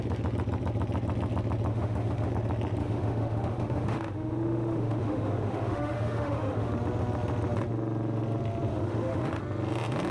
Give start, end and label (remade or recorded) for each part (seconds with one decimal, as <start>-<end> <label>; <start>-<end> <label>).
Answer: 0.0-1.7 recorded; 1.7-2.3 remade; 2.3-2.8 recorded; 2.8-6.7 remade; 6.7-8.7 recorded; 8.7-9.4 remade; 9.4-10.1 recorded